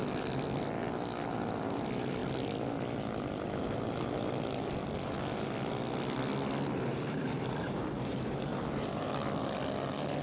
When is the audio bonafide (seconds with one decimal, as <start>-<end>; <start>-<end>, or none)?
0.0-6.9; 9.1-10.2